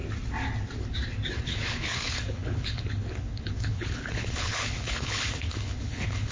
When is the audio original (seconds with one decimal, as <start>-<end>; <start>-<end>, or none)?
0.0-1.3